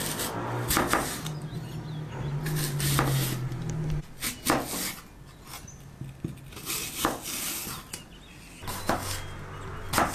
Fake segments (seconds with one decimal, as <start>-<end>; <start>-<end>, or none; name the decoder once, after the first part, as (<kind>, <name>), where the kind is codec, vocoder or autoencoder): none